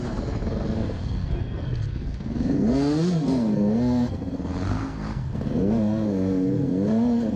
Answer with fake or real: fake